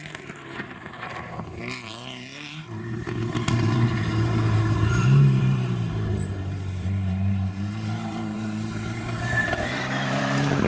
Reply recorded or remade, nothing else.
remade